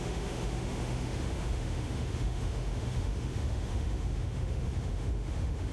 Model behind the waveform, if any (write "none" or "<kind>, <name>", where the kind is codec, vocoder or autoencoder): autoencoder, DAC-VAE